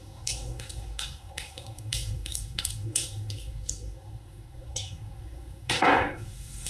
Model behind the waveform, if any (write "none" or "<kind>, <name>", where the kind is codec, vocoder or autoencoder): codec, SNAC